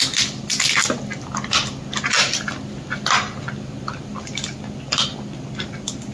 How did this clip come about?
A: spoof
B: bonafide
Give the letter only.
B